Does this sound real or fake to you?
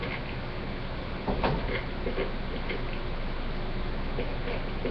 real